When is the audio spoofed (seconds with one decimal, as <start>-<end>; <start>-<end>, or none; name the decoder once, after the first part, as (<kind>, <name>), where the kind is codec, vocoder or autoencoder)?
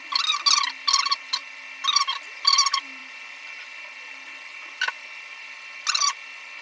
none